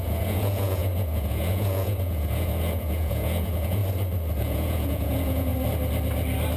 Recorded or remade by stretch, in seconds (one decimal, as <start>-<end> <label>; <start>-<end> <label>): 0.0-3.8 remade; 3.8-4.4 recorded; 4.4-5.5 remade; 5.5-6.6 recorded